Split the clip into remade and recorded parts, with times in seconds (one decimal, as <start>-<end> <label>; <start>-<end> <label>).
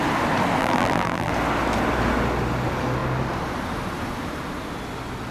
0.0-0.6 recorded; 0.6-1.3 remade; 1.3-5.3 recorded